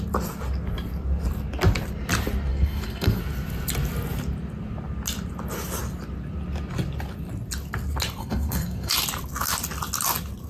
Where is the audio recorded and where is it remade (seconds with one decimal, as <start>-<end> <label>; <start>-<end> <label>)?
0.0-2.5 recorded; 2.5-3.2 remade; 3.2-8.2 recorded; 8.2-8.9 remade; 8.9-10.5 recorded